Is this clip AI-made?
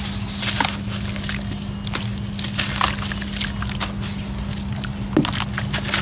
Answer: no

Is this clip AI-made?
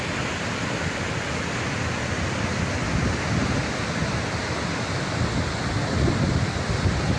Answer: no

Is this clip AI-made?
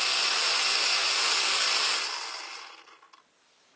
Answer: no